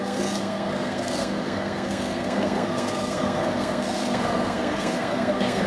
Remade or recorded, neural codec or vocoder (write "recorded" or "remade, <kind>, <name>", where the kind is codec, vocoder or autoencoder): remade, codec, SNAC